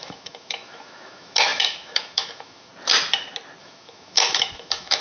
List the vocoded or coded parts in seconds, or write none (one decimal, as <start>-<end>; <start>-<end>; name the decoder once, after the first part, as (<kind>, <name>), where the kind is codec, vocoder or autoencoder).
0.0-2.7 (autoencoder, DAC-VAE); 3.6-5.0